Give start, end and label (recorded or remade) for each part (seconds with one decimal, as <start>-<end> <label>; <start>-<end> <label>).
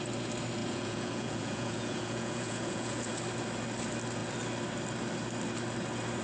0.0-0.6 recorded; 0.6-3.2 remade; 3.2-6.2 recorded